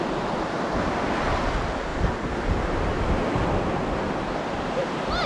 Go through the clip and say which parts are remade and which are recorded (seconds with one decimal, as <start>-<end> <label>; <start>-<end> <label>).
0.0-5.3 recorded